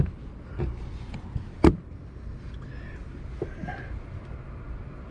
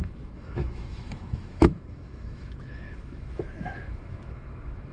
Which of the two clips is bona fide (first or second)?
first